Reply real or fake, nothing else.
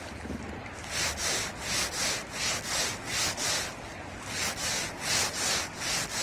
real